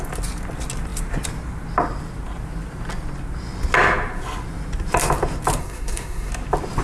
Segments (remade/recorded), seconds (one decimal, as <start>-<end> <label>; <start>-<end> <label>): 0.0-5.6 recorded; 5.6-6.3 remade; 6.3-6.8 recorded